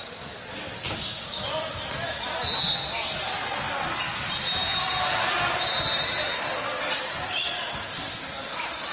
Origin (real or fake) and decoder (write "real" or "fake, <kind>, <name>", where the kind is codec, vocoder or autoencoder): real